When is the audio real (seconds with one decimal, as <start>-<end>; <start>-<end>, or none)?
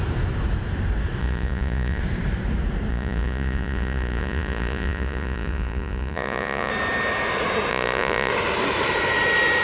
0.0-1.2; 2.0-2.9; 6.7-7.7; 8.3-9.6